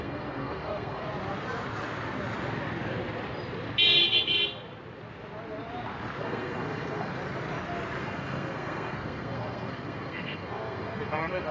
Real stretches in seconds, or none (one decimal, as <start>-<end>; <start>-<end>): 1.0-6.2; 7.1-8.0